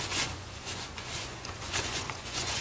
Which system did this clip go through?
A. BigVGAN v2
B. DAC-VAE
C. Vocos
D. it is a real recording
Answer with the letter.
C